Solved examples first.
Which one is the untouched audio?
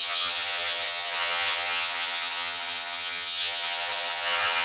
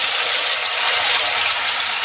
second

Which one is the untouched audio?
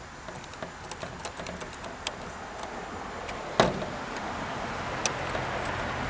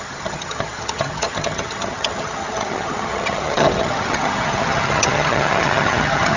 first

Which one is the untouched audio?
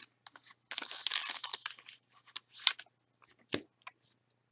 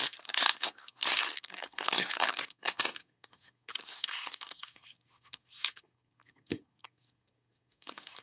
first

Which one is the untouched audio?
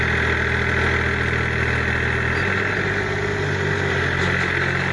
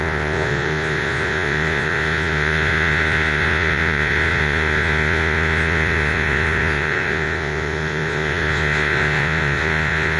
first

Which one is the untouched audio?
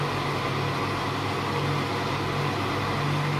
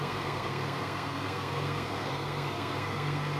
first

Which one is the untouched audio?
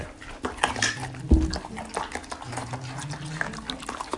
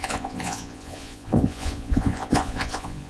first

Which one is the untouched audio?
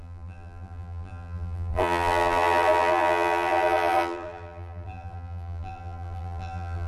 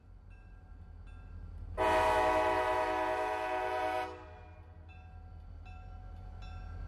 second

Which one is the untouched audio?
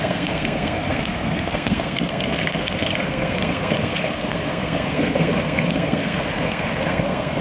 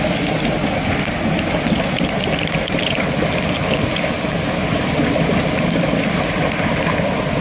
second